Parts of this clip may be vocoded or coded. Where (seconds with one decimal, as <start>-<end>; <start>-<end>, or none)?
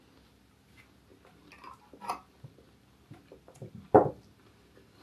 none